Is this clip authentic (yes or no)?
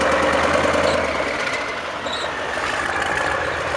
yes